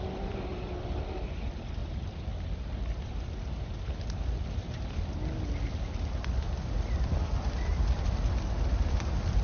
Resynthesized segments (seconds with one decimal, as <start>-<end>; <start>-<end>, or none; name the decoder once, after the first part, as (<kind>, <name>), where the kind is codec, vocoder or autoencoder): 1.8-3.7 (vocoder, BigVGAN v2)